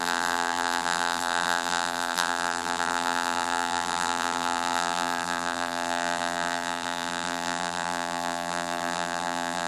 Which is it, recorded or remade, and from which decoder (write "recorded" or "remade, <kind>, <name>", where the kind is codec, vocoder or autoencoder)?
remade, vocoder, BigVGAN v2